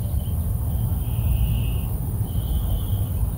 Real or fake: real